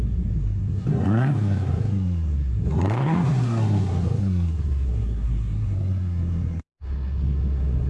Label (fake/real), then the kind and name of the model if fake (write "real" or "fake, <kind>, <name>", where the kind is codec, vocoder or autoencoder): fake, codec, SNAC